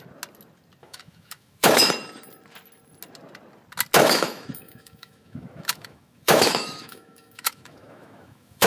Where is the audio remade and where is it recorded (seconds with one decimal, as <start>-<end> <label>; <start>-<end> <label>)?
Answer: 0.0-0.8 recorded; 0.8-1.9 remade; 1.9-4.0 recorded; 4.0-8.7 remade